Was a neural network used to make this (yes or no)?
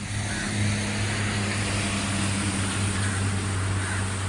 no